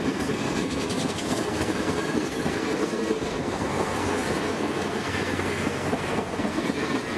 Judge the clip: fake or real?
fake